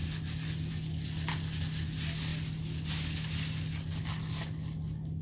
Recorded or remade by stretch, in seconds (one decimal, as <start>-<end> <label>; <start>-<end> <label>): 0.0-5.2 recorded